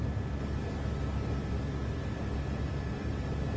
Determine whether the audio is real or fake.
real